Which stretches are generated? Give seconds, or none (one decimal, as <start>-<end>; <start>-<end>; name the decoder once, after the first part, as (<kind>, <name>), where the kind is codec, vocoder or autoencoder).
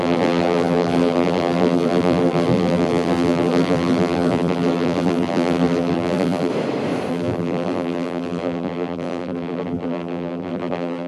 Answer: 0.0-6.5 (vocoder, BigVGAN v2); 7.1-11.1